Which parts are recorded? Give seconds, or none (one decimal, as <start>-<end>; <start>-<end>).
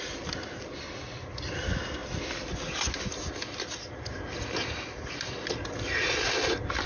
0.0-6.9